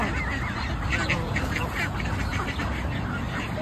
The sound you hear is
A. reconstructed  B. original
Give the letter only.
B